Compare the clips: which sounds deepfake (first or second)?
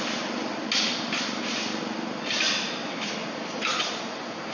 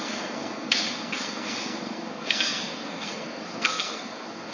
second